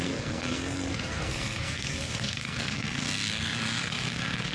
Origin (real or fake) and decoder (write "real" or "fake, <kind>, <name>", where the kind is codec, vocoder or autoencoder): fake, codec, SNAC